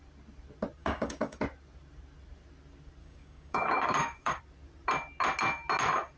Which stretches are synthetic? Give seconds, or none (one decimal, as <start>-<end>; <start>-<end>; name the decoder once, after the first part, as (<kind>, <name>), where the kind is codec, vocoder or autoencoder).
0.8-1.4 (codec, DAC); 3.0-4.4